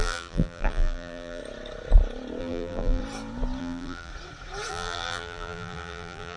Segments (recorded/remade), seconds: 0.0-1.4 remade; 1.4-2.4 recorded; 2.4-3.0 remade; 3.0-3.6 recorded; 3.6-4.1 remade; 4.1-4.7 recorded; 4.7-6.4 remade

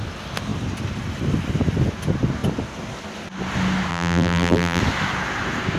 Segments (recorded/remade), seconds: 0.0-3.9 recorded; 3.9-4.8 remade; 4.8-5.8 recorded

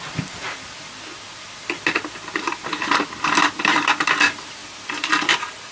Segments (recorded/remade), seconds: 0.0-5.7 recorded

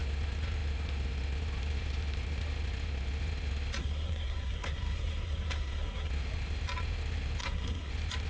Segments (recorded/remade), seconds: 0.0-3.8 recorded; 3.8-6.1 remade; 6.1-7.4 recorded; 7.4-7.9 remade; 7.9-8.3 recorded

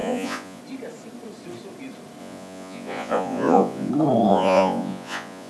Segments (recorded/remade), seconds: 0.0-0.6 remade; 0.6-2.2 recorded; 2.2-3.9 remade; 3.9-4.3 recorded; 4.3-5.5 remade

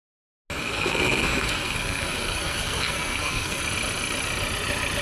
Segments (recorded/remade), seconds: 0.0-0.6 recorded; 0.6-3.6 remade; 3.6-5.0 recorded

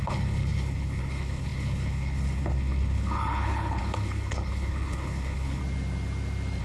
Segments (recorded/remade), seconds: 0.0-5.6 remade; 5.6-6.6 recorded